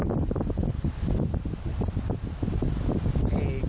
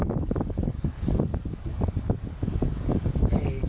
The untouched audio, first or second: first